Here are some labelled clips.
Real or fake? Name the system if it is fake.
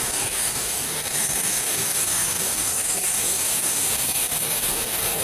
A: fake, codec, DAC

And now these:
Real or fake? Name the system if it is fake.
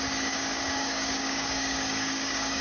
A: fake, codec, DAC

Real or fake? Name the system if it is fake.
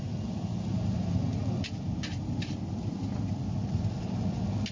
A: real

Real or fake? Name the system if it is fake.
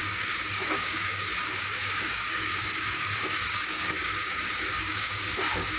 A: fake, codec, DAC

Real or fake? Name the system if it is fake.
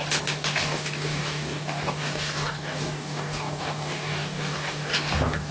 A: fake, codec, DAC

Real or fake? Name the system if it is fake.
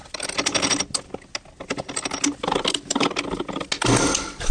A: real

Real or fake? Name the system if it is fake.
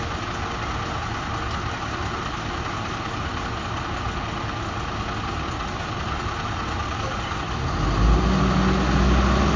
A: real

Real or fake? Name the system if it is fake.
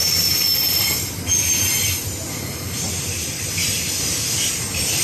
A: real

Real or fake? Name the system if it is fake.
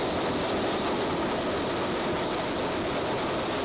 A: real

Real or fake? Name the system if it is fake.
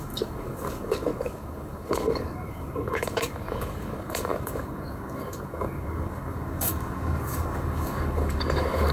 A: fake, codec, DAC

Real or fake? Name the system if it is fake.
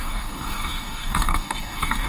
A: fake, codec, DAC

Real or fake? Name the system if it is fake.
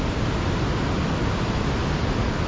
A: real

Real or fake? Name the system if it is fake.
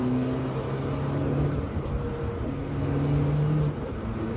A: real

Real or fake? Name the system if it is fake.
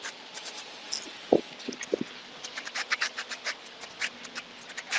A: real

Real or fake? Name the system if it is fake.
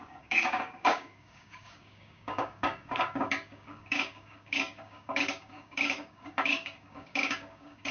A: fake, codec, DAC